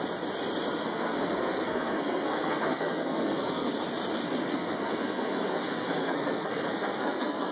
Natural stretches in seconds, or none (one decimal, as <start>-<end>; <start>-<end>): 0.0-0.8; 3.7-4.5